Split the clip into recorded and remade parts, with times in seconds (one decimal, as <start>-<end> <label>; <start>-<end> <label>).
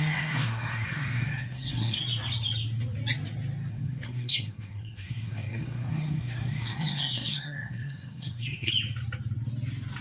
0.0-2.0 remade; 2.0-3.7 recorded; 3.7-8.7 remade; 8.7-10.0 recorded